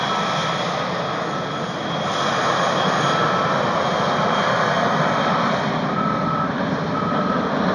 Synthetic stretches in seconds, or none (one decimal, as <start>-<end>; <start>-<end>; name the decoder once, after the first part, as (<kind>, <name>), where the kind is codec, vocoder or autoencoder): none

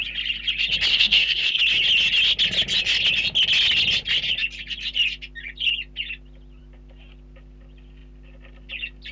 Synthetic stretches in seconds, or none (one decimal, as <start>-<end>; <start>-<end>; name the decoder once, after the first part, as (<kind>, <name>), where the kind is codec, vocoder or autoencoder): 0.9-1.6 (codec, SNAC)

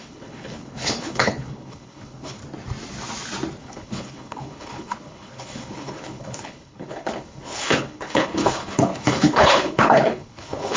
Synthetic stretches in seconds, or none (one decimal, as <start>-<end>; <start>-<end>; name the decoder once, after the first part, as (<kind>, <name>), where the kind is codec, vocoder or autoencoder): 0.0-2.4 (codec, HILCodec); 3.6-10.8

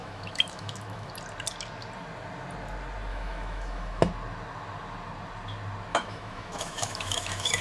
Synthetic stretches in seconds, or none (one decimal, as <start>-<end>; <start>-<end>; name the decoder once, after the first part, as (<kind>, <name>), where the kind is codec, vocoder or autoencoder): 0.0-1.1 (autoencoder, DAC-VAE); 3.1-4.0; 5.9-7.6

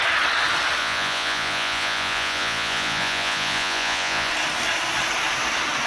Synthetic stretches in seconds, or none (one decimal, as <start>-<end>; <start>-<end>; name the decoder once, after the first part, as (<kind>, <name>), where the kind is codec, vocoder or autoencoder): 0.8-4.3 (vocoder, Vocos)

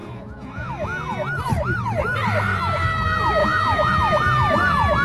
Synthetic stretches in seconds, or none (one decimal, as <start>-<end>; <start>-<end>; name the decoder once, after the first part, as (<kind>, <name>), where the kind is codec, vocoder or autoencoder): 0.0-0.7 (vocoder, Vocos); 3.4-3.9